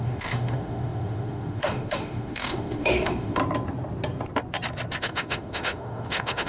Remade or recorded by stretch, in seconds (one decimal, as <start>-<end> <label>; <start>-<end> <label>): 0.0-3.4 remade; 3.4-5.0 recorded; 5.0-6.5 remade